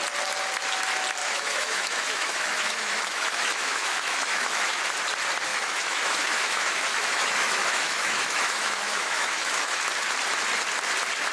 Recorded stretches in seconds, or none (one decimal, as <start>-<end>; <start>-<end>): 0.0-1.2; 4.8-5.5; 9.8-11.3